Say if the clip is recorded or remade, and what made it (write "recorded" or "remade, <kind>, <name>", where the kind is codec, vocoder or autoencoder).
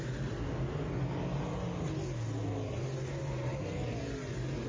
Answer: recorded